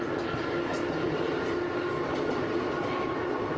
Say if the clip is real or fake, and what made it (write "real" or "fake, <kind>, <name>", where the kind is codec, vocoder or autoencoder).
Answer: real